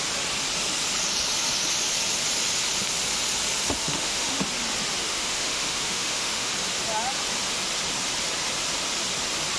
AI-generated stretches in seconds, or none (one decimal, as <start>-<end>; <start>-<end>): 3.8-4.4; 5.0-6.5